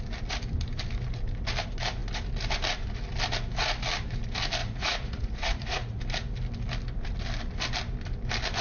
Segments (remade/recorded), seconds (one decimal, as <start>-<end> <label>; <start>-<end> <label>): 0.0-4.6 recorded; 4.6-6.0 remade; 6.0-8.6 recorded